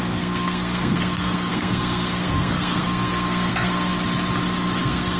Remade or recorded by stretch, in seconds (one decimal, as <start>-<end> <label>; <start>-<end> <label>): 0.0-3.9 remade; 3.9-4.8 recorded; 4.8-5.2 remade